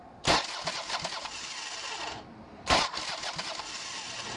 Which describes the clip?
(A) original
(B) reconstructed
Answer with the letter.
A